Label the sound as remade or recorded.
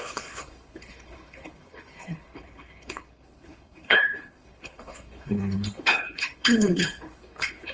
remade